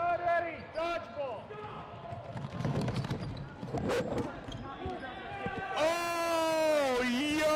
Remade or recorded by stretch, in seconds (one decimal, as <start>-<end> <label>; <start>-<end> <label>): 0.0-2.3 recorded; 2.3-3.0 remade; 3.0-7.6 recorded